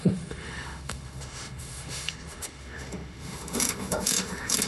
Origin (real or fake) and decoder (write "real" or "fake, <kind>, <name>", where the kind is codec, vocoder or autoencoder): fake, autoencoder, DAC-VAE